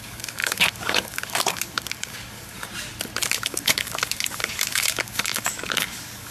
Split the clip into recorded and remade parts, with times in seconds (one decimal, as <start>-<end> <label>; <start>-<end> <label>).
0.0-2.7 remade; 2.7-3.3 recorded; 3.3-6.3 remade